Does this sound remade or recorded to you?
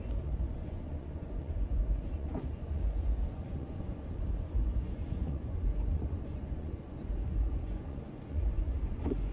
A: remade